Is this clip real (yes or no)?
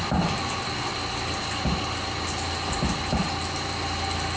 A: yes